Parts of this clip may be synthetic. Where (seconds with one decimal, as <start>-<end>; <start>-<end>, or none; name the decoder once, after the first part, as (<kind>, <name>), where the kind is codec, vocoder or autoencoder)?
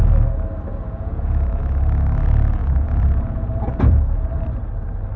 0.7-1.6 (vocoder, Vocos); 2.6-4.3